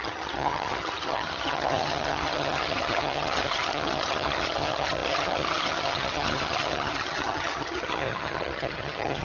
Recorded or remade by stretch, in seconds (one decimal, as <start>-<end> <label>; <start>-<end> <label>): 0.0-9.2 remade